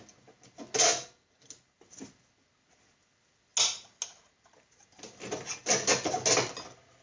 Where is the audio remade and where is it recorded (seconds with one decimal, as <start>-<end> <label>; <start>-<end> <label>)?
0.0-7.0 recorded